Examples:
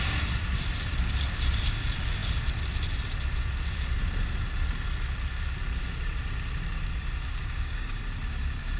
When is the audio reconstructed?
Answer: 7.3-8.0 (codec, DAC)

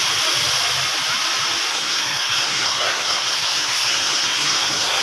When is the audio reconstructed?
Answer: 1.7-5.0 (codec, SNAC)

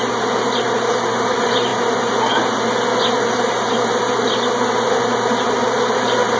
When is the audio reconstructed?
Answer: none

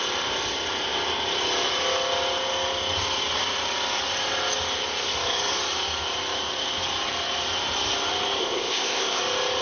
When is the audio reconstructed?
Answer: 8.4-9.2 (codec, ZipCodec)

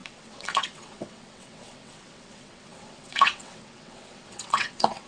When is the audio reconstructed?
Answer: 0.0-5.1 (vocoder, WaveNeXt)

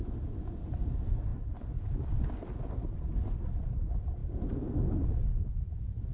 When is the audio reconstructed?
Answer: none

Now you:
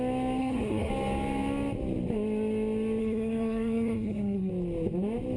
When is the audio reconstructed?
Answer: 0.4-0.9 (codec, SNAC); 3.0-4.5